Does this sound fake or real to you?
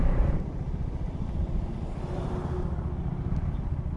fake